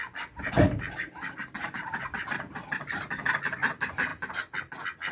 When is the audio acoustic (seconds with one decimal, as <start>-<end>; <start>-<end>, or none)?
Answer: 3.1-5.1